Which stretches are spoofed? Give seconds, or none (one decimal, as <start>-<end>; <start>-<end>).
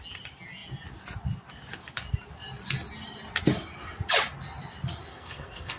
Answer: 5.1-5.8